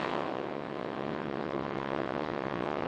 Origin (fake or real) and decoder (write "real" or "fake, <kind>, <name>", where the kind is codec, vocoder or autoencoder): fake, vocoder, WaveNeXt